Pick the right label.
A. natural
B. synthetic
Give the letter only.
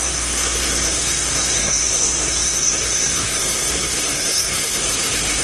B